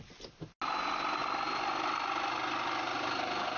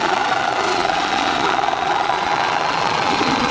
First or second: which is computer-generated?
second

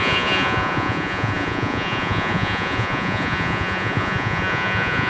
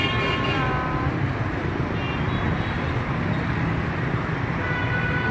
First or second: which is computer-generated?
first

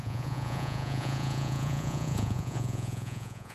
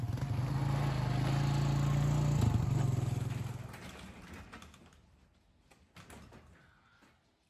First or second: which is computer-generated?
first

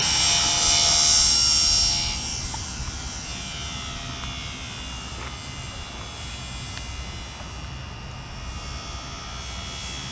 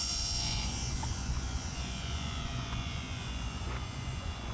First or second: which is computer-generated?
second